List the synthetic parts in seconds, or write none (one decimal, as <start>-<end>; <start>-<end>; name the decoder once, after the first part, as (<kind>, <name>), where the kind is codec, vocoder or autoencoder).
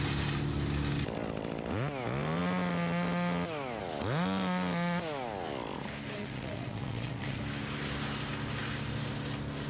6.2-7.4 (vocoder, WaveNeXt)